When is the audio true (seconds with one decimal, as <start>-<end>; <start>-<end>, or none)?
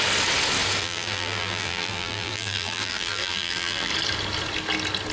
0.0-0.8; 3.9-5.1